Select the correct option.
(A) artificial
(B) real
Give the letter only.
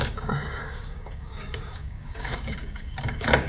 A